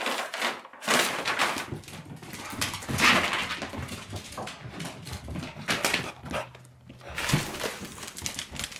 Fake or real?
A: real